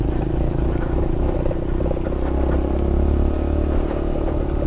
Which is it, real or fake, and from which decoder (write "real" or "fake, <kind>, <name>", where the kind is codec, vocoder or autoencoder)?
real